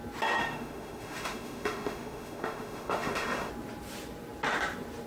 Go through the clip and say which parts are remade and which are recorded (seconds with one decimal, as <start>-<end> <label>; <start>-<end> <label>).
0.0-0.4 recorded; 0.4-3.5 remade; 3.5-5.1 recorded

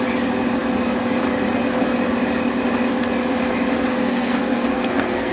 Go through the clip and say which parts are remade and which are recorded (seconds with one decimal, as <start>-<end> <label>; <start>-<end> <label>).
0.0-3.9 recorded; 3.9-5.3 remade

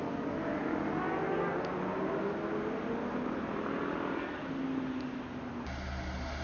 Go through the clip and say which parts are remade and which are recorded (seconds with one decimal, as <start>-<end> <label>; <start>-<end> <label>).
0.0-6.4 recorded

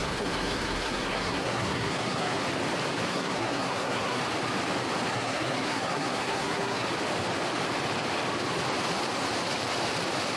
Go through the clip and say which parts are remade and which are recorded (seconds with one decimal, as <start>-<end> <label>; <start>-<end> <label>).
0.0-2.4 remade; 2.4-3.1 recorded; 3.1-4.2 remade; 4.2-5.1 recorded; 5.1-6.9 remade; 6.9-10.4 recorded

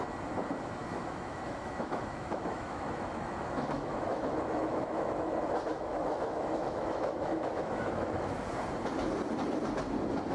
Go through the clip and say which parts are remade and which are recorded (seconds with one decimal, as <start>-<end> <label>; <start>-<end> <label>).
0.0-0.8 recorded; 0.8-5.3 remade; 5.3-5.7 recorded; 5.7-8.4 remade; 8.4-10.3 recorded

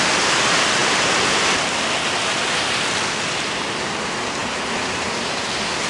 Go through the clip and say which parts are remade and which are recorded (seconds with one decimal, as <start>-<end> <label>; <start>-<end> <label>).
0.0-5.9 recorded

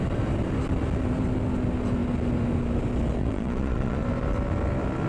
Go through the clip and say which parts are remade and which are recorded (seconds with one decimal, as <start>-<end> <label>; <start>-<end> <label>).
0.0-3.2 recorded; 3.2-4.0 remade; 4.0-5.1 recorded